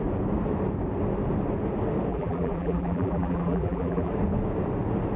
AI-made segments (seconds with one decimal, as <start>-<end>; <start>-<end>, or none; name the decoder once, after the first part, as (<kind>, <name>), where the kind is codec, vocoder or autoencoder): 2.1-4.1 (vocoder, BigVGAN v2)